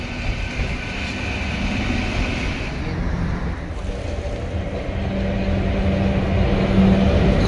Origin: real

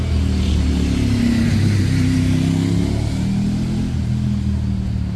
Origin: real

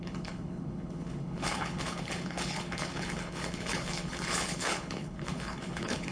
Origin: fake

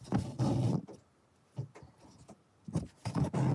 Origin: real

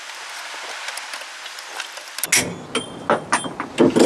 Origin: real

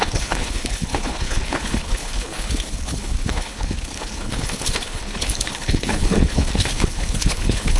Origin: fake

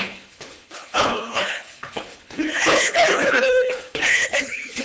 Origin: fake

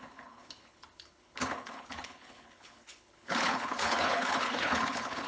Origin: fake